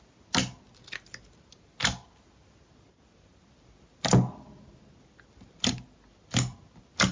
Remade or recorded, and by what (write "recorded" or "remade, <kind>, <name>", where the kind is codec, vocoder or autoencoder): recorded